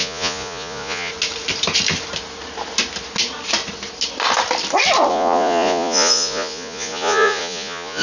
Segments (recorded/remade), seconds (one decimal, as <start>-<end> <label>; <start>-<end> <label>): 0.0-1.1 remade; 1.1-5.1 recorded; 5.1-8.0 remade